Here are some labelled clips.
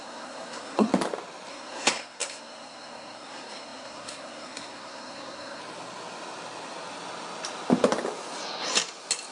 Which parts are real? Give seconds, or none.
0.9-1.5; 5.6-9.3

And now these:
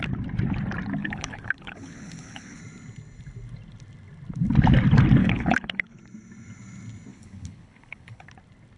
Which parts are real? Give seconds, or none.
0.0-1.0; 2.6-5.2; 6.0-7.1; 8.3-8.8

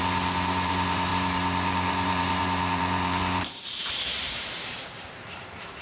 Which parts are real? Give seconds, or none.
none

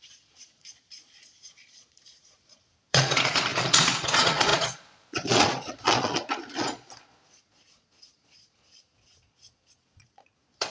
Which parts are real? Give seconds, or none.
none

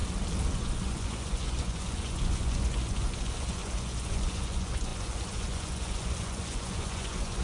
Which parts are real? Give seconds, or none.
0.0-0.5

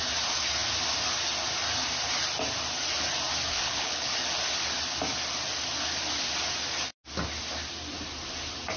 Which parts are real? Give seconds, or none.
0.0-3.5; 4.1-8.8